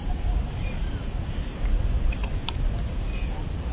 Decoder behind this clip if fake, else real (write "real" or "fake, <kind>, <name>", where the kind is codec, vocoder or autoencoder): real